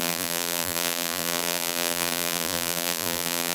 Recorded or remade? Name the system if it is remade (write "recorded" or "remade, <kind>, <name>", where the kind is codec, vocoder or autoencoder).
remade, vocoder, BigVGAN v2